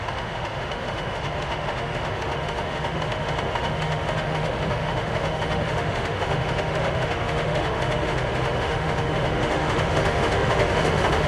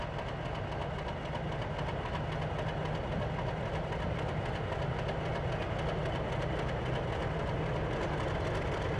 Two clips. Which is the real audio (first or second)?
second